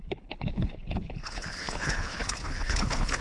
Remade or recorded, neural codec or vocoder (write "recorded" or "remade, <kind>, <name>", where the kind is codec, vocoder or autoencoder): remade, codec, HILCodec